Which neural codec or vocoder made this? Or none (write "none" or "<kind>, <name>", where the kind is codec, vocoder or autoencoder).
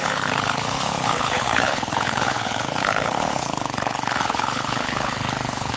codec, HILCodec